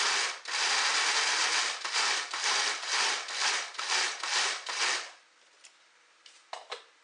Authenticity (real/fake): real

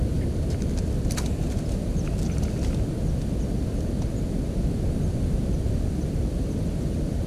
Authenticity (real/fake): real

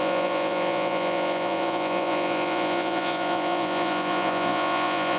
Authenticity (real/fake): fake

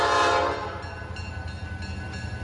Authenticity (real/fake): real